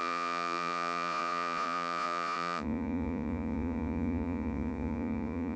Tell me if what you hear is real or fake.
fake